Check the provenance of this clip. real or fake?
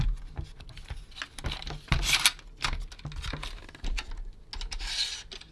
real